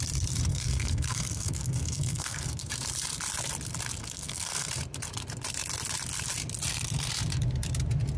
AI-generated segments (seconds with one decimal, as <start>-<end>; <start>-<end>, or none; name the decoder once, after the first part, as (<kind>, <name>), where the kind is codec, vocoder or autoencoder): 0.5-2.7 (codec, SNAC); 4.0-4.7